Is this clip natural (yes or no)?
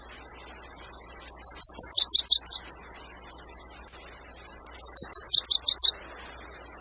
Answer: yes